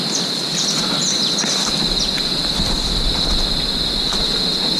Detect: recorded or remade recorded